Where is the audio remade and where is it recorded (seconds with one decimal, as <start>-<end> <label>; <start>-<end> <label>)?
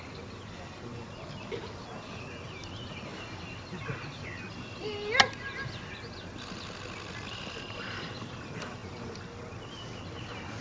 0.0-10.6 recorded